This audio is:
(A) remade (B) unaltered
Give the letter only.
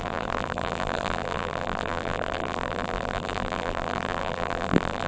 A